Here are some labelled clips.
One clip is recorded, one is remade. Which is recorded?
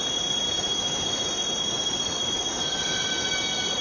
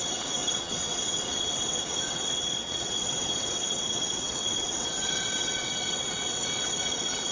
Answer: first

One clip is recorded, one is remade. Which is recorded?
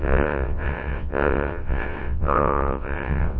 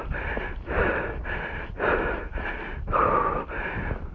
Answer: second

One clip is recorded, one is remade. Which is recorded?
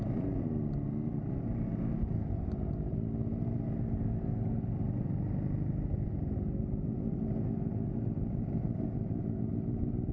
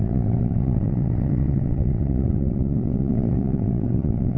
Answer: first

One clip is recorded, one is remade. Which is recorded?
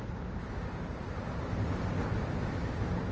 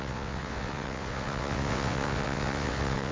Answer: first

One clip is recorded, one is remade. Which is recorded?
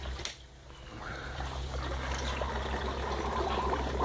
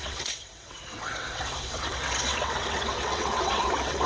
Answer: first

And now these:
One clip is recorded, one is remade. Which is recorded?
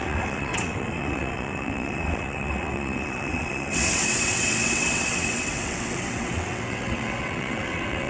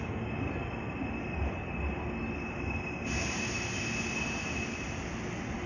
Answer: second